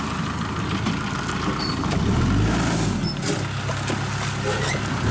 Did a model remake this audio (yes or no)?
no